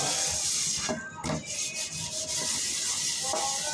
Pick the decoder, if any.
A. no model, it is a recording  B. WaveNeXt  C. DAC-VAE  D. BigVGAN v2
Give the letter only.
A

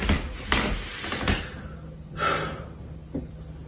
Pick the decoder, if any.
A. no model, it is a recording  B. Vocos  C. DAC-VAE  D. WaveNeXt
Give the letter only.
A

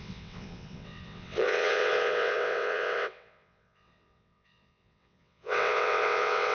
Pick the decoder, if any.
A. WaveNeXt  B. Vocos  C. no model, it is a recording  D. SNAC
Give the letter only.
A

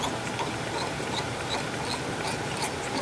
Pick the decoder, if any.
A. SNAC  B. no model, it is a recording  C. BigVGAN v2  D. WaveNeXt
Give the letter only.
B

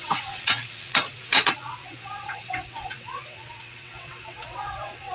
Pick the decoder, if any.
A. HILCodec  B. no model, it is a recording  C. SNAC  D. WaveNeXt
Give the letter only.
D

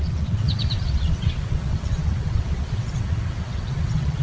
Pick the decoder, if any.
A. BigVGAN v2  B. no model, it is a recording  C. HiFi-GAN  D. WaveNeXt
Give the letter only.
D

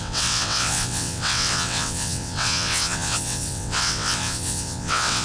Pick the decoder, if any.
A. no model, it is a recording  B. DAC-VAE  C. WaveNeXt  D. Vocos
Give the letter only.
C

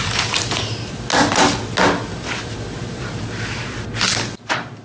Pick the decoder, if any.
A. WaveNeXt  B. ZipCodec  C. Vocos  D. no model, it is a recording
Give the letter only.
D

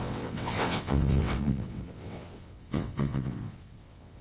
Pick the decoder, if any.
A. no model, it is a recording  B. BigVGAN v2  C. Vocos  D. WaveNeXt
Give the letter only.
D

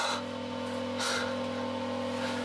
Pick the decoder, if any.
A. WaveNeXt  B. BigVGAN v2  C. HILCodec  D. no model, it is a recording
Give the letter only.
D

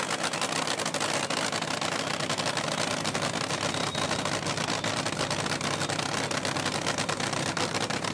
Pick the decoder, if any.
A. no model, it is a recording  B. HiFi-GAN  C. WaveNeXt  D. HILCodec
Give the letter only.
A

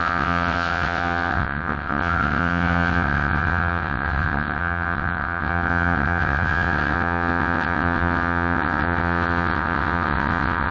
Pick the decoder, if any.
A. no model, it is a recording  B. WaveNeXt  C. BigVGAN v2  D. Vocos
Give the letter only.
B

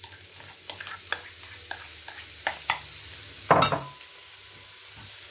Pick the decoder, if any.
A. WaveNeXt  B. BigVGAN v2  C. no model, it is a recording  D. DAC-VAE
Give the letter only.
C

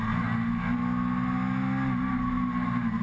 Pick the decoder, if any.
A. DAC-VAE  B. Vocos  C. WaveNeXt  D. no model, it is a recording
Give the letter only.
D